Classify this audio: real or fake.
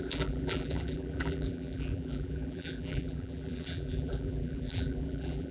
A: fake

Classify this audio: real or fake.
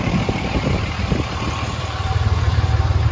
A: fake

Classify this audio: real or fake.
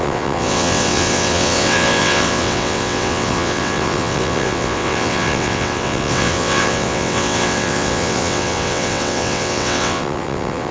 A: fake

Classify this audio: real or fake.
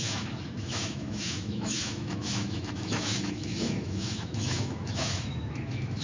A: fake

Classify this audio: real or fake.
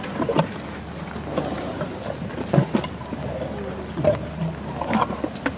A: real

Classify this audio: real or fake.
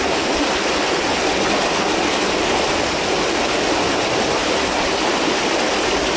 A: real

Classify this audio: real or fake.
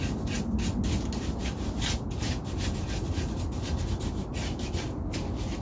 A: real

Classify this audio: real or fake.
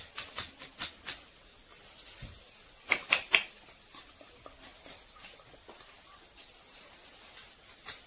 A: real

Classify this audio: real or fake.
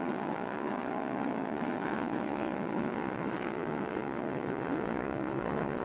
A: fake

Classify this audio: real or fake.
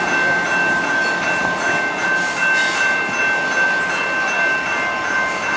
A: real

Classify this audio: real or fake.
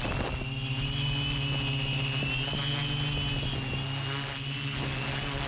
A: real